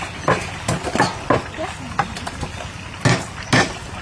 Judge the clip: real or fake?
real